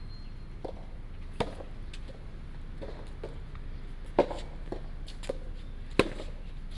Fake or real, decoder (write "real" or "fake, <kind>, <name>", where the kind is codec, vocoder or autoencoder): real